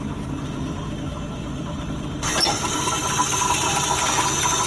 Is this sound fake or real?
real